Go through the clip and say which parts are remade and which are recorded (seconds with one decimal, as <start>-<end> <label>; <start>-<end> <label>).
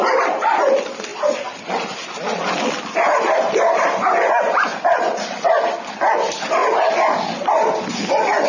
0.0-1.1 remade; 1.1-2.7 recorded; 2.7-4.7 remade; 4.7-5.9 recorded; 5.9-6.6 remade; 6.6-7.3 recorded; 7.3-8.5 remade